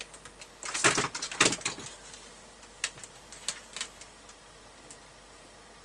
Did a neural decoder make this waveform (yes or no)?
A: no